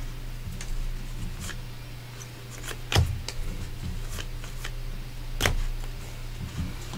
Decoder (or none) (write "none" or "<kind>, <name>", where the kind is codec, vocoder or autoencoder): none